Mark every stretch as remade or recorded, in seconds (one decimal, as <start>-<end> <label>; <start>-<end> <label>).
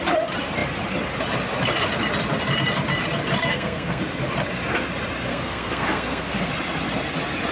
0.0-3.4 recorded; 3.4-4.0 remade; 4.0-5.3 recorded; 5.3-6.5 remade; 6.5-7.5 recorded